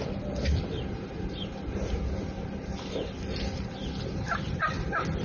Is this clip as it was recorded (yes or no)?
yes